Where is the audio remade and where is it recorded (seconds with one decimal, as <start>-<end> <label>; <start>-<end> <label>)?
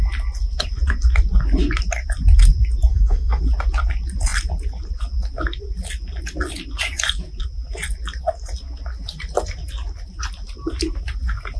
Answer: 0.0-2.9 recorded; 2.9-3.4 remade; 3.4-11.6 recorded